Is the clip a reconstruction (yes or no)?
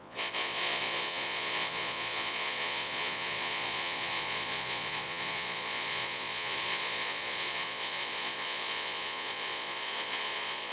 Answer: yes